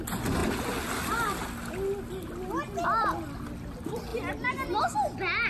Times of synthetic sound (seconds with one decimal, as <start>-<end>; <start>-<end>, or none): none